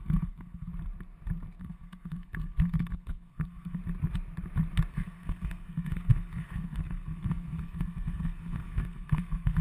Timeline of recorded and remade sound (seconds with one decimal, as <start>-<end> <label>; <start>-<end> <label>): 0.0-0.7 remade; 0.7-1.6 recorded; 1.6-3.8 remade; 3.8-4.9 recorded; 4.9-9.6 remade